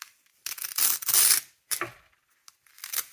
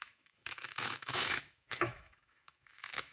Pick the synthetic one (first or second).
second